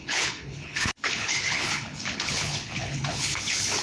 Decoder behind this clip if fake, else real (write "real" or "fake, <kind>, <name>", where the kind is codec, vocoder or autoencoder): fake, codec, HILCodec